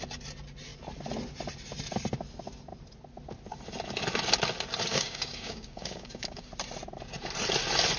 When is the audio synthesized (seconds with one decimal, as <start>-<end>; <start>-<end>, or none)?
4.9-6.5